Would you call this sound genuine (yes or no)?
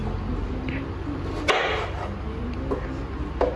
yes